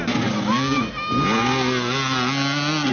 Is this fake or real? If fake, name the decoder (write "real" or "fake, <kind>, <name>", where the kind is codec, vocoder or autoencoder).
real